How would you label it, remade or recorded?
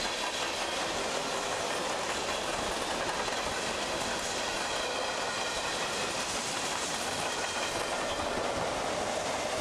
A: recorded